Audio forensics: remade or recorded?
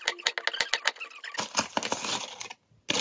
recorded